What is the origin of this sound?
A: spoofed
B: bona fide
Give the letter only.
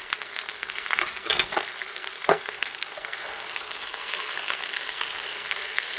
A